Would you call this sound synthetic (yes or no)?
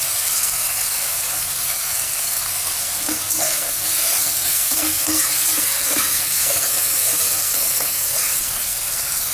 yes